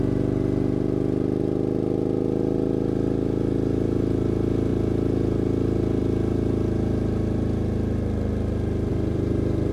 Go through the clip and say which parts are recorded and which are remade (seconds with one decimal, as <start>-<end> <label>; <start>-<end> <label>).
0.0-8.9 recorded; 8.9-9.7 remade